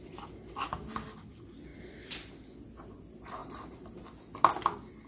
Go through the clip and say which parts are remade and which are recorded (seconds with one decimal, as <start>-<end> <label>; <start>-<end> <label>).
0.0-3.4 recorded; 3.4-4.0 remade; 4.0-5.1 recorded